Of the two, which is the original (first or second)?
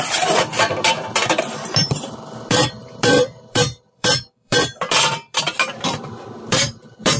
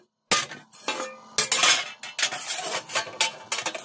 second